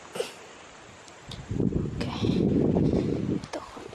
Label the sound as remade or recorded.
recorded